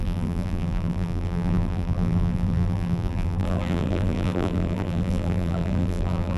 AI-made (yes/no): yes